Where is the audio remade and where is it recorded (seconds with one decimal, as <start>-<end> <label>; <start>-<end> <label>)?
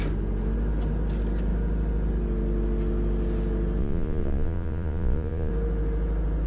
0.0-3.8 recorded; 3.8-5.5 remade; 5.5-6.5 recorded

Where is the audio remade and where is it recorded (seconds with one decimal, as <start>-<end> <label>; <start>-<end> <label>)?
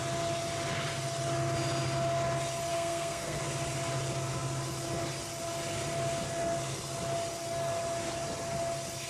0.0-2.7 recorded; 2.7-3.4 remade; 3.4-9.1 recorded